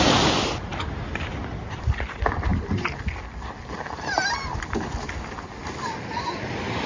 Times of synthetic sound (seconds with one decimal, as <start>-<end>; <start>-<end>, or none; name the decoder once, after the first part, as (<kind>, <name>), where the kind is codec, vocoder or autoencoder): none